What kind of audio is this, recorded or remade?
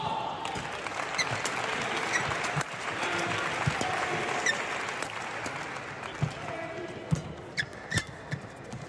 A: recorded